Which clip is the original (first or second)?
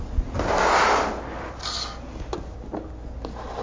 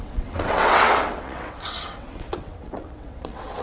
first